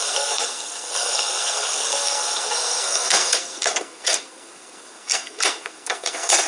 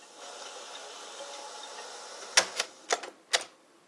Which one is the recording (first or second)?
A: second